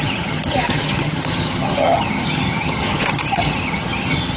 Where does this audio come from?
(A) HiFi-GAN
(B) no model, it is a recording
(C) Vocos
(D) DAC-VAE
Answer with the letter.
A